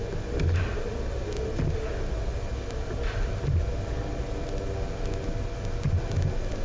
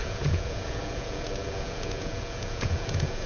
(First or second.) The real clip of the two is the first